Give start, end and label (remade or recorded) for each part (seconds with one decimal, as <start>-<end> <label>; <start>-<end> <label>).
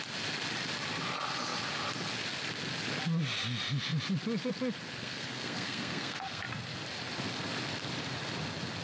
0.0-5.0 recorded; 5.0-6.4 remade; 6.4-8.8 recorded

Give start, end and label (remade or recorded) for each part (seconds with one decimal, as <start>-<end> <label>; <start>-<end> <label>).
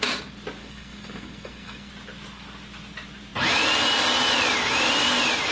0.0-0.6 recorded; 0.6-1.9 remade; 1.9-5.5 recorded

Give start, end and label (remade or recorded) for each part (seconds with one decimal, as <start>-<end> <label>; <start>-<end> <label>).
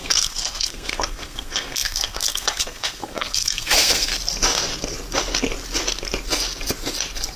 0.0-4.1 remade; 4.1-7.4 recorded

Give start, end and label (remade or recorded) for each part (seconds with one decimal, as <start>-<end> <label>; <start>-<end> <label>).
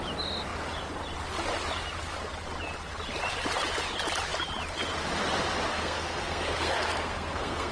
0.0-5.7 recorded; 5.7-7.7 remade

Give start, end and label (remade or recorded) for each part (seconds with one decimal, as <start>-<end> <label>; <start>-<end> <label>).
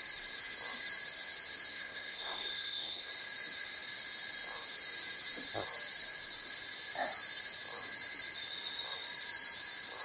0.0-1.7 recorded; 1.7-3.1 remade; 3.1-10.0 recorded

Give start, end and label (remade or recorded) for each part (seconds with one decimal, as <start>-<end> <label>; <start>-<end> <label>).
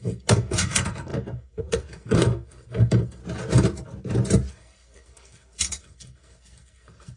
0.0-3.2 remade; 3.2-4.5 recorded; 4.5-7.2 remade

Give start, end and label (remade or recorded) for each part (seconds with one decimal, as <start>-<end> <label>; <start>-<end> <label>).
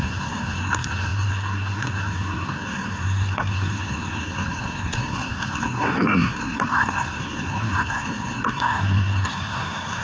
0.0-10.0 remade